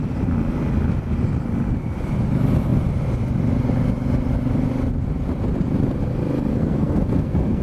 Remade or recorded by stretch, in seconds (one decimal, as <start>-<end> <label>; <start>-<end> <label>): 0.0-6.5 recorded; 6.5-7.6 remade